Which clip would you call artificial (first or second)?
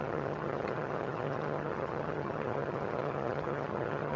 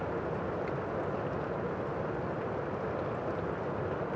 first